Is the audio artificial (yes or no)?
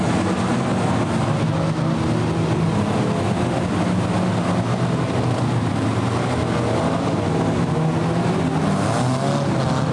no